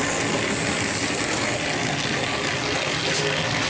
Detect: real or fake real